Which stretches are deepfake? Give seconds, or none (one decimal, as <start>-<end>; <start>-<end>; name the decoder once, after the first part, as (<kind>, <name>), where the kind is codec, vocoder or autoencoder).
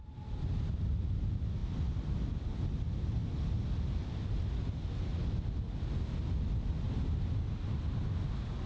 none